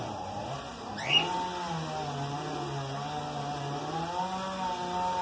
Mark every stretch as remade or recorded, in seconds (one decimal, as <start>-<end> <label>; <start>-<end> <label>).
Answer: 0.0-5.2 recorded